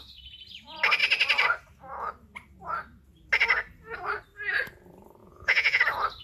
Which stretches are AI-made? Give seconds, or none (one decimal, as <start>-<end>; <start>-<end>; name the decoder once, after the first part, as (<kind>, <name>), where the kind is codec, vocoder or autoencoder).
5.2-5.8 (vocoder, Vocos)